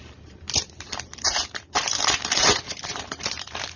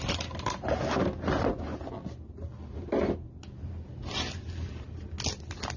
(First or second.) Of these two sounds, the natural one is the second